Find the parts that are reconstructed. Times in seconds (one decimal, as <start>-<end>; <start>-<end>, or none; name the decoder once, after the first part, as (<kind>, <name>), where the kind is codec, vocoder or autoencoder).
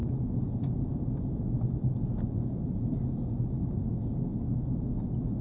0.0-0.9 (vocoder, BigVGAN v2)